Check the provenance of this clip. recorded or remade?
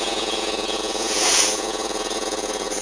remade